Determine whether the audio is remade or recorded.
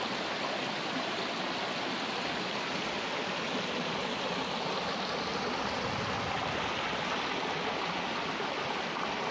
recorded